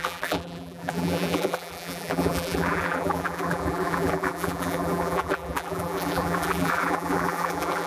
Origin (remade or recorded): remade